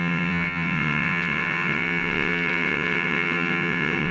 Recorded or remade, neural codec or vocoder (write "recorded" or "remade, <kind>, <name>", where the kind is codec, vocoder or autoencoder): remade, vocoder, WaveNeXt